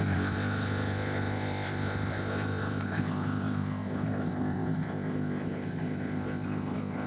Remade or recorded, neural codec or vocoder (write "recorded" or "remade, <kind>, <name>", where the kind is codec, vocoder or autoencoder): remade, codec, ZipCodec